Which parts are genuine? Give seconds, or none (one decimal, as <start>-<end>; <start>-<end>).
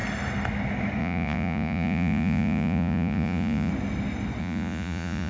0.0-1.0; 3.7-4.4